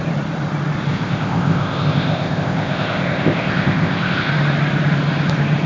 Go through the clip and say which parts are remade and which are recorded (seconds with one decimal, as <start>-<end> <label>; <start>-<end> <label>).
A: 0.0-0.9 recorded; 0.9-4.3 remade; 4.3-5.7 recorded